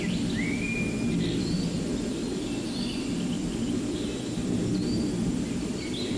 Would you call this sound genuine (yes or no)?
yes